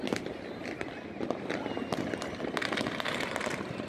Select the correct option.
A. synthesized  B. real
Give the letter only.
B